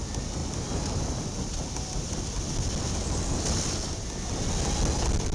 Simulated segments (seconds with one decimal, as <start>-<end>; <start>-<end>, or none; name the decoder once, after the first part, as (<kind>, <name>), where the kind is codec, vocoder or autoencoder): none

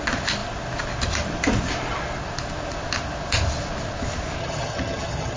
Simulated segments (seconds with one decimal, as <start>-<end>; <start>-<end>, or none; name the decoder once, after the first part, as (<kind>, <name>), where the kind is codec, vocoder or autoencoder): 4.4-5.4 (vocoder, HiFi-GAN)